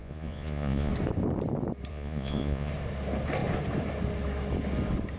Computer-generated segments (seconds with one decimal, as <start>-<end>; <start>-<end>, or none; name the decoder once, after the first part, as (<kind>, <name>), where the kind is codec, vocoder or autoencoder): 0.0-0.9 (vocoder, Vocos); 1.9-2.7